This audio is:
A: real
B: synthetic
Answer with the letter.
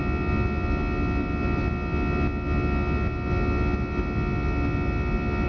A